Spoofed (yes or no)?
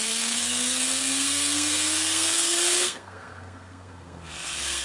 yes